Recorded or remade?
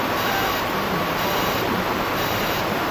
remade